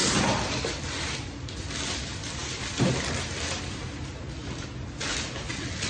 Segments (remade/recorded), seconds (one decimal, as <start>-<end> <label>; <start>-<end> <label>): 0.0-5.9 recorded